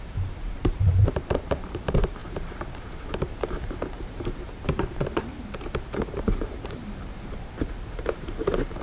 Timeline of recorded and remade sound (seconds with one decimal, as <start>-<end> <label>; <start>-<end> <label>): 0.0-6.8 remade; 6.8-7.3 recorded; 7.3-8.8 remade